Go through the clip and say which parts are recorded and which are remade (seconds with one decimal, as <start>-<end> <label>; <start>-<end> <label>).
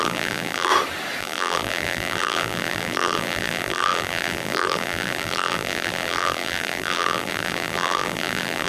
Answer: 0.0-0.7 remade; 0.7-1.2 recorded; 1.2-8.7 remade